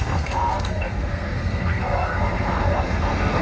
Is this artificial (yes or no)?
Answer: yes